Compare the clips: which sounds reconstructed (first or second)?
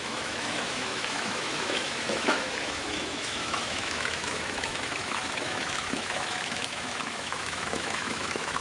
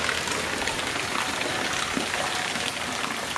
first